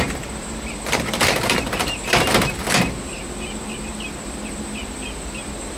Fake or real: real